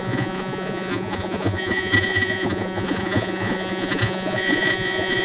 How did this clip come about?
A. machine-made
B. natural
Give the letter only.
A